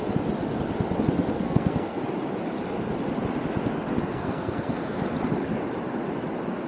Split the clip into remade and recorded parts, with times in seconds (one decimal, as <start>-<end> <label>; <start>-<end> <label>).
0.0-1.3 recorded; 1.3-2.0 remade; 2.0-4.1 recorded; 4.1-5.0 remade; 5.0-6.7 recorded